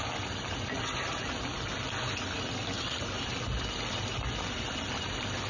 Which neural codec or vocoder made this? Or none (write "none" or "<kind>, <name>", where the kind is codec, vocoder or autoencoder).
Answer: none